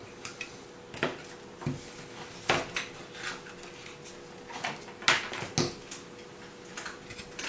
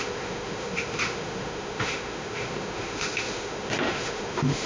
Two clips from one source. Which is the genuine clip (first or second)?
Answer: first